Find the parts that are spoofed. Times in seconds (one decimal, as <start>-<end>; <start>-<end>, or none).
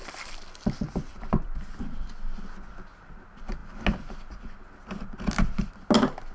none